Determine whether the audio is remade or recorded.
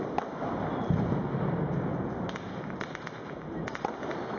recorded